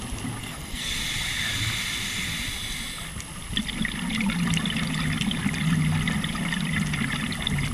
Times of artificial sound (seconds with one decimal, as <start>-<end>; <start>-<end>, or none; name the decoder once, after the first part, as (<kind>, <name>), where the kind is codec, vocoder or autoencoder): 0.4-0.9 (codec, SNAC)